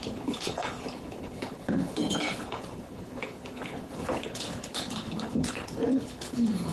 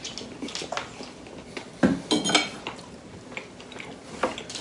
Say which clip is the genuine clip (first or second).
second